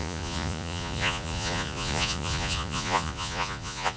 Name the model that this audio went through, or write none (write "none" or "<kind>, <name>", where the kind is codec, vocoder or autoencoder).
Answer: vocoder, Vocos